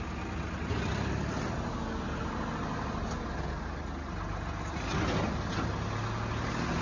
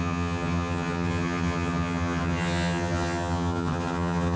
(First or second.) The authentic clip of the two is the first